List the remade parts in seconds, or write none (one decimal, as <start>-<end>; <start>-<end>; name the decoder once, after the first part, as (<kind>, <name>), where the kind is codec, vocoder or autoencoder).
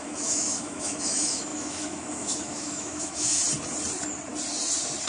0.0-3.4 (autoencoder, DAC-VAE)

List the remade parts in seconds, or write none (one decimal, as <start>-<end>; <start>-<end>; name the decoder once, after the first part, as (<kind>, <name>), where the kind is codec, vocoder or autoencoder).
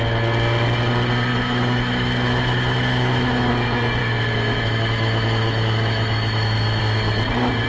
1.3-3.5 (autoencoder, DAC-VAE); 4.0-6.8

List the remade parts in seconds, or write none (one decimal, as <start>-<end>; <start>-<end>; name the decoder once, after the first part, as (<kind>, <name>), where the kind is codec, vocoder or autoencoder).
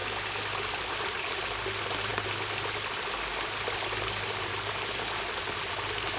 none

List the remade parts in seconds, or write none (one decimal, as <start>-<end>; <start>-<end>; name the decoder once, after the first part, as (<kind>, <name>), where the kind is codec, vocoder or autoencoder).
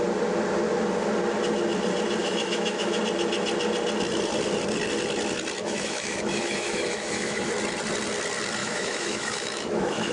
2.2-3.0 (autoencoder, DAC-VAE); 5.6-7.5; 8.6-10.1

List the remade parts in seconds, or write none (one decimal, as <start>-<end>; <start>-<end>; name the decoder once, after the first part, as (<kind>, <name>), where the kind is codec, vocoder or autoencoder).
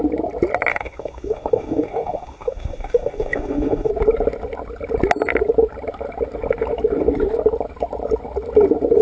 0.7-3.9 (autoencoder, DAC-VAE)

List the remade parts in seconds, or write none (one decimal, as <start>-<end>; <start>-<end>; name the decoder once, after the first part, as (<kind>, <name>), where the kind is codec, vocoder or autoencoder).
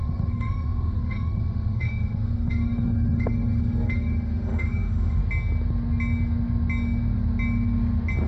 0.0-5.2 (autoencoder, DAC-VAE)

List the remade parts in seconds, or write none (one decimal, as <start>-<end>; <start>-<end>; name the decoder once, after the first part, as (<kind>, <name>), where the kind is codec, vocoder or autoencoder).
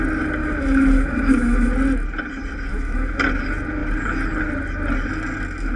0.4-1.7 (autoencoder, DAC-VAE); 2.7-3.2